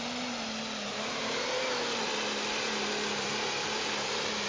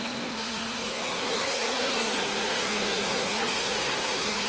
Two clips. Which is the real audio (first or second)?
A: first